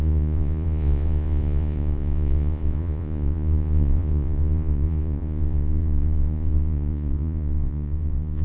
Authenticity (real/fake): fake